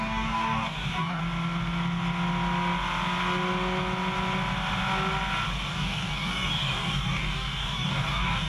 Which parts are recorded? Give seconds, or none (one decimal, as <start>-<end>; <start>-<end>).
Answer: 1.2-5.7